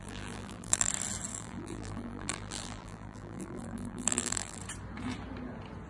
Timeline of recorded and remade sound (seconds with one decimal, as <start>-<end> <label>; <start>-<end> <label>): 0.0-0.9 remade; 0.9-1.3 recorded; 1.3-4.6 remade; 4.6-5.9 recorded